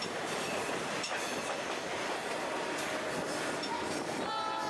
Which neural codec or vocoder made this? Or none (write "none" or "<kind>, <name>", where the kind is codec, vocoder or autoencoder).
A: none